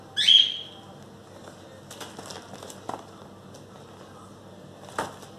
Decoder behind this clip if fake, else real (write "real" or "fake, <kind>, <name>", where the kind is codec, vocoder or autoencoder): real